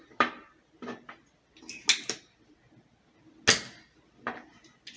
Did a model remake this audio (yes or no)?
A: no